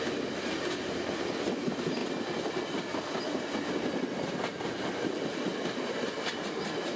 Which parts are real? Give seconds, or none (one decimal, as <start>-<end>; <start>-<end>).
0.0-7.0